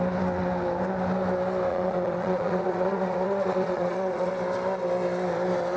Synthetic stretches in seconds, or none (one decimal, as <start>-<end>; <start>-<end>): 1.7-4.3

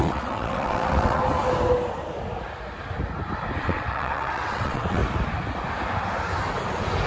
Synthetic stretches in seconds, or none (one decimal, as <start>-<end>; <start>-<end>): 0.0-1.2; 3.6-5.0

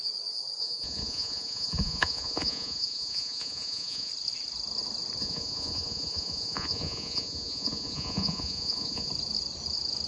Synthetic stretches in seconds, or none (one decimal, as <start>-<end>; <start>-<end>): 0.6-4.1; 5.2-9.1

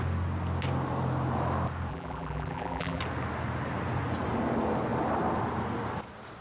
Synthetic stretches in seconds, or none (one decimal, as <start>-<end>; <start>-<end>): 1.9-3.0

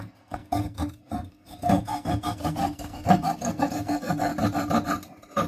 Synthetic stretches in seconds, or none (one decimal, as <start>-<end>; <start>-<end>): 0.0-4.3

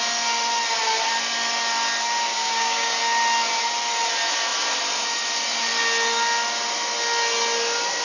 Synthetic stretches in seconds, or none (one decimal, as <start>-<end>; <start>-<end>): 2.3-3.0

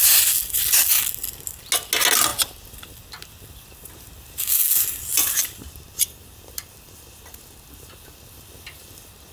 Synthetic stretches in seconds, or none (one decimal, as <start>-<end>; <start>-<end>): none